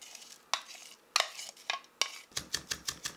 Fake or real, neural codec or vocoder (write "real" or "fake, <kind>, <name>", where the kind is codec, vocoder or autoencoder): real